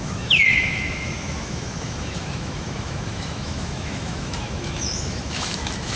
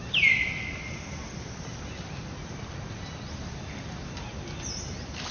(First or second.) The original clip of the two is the second